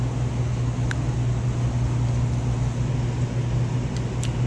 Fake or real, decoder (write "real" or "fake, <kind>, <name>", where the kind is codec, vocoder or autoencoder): real